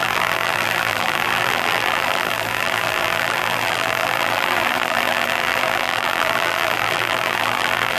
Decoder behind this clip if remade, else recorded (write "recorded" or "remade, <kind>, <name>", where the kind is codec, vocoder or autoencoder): remade, vocoder, BigVGAN v2